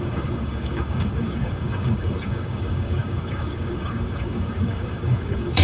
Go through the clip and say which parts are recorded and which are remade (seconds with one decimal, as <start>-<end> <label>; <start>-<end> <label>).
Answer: 0.0-5.6 remade